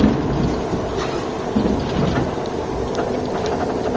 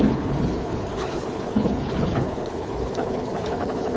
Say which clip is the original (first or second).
first